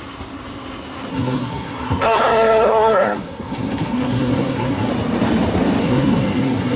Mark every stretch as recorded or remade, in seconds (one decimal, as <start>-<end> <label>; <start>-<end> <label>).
0.0-1.1 recorded; 1.1-4.9 remade; 4.9-5.8 recorded; 5.8-6.8 remade